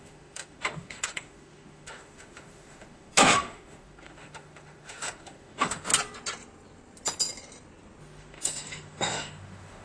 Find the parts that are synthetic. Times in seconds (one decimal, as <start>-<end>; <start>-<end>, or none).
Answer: 0.0-5.9; 8.0-9.8